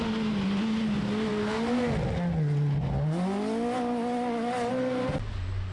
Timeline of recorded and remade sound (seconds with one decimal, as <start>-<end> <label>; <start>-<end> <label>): 0.0-5.7 recorded